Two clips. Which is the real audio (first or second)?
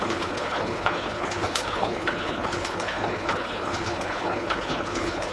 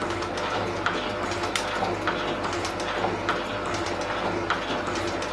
second